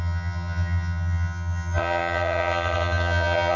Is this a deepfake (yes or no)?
yes